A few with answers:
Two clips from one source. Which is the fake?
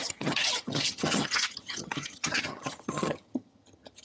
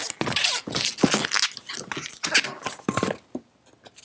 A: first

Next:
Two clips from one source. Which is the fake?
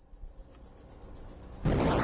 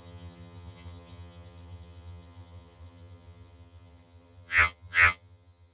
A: second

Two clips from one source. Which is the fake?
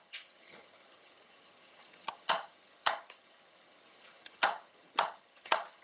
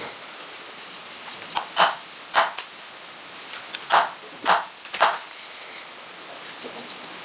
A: first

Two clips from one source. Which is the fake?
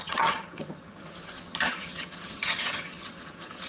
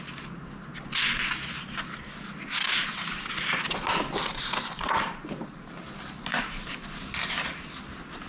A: first